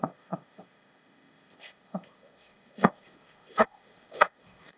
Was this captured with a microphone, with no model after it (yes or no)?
no